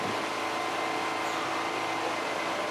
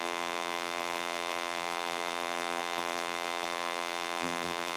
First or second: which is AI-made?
second